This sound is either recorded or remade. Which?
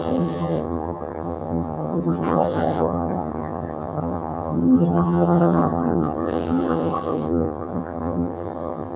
remade